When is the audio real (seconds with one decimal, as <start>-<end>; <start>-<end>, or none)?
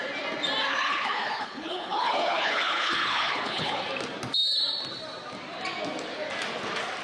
0.0-0.7; 3.8-7.0